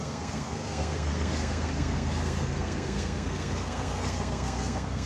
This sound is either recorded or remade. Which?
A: remade